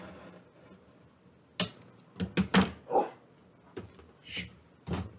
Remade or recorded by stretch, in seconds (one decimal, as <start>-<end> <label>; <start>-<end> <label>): 0.0-5.2 recorded